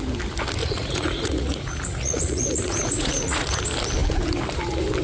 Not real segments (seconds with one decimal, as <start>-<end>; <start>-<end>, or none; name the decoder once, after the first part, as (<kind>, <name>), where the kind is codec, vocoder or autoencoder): 0.6-3.6 (vocoder, Vocos)